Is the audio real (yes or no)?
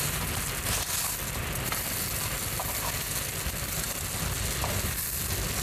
yes